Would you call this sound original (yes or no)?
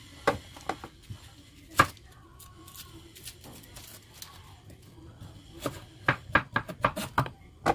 yes